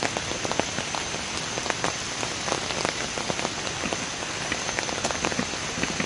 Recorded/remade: recorded